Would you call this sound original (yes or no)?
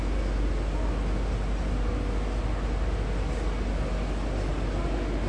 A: yes